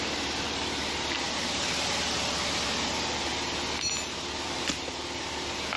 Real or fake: real